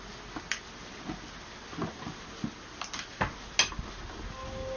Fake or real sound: real